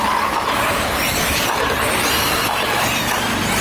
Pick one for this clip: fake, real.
fake